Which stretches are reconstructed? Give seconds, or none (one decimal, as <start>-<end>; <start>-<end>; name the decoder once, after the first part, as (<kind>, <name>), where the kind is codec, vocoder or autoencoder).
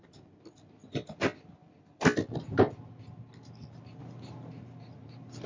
4.0-5.5 (vocoder, BigVGAN v2)